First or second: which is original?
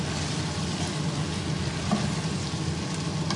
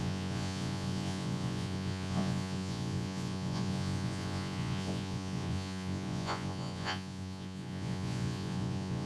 first